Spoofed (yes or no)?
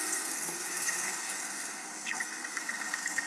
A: yes